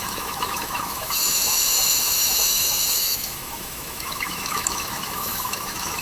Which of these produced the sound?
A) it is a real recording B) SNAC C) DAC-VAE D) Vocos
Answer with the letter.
C